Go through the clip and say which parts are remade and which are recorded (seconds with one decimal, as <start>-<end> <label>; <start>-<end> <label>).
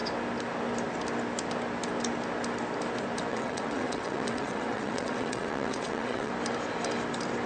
0.0-3.3 recorded; 3.3-6.3 remade; 6.3-7.5 recorded